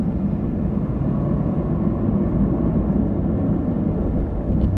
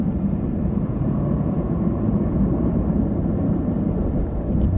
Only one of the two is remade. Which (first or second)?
second